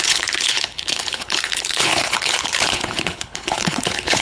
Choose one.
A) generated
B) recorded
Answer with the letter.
A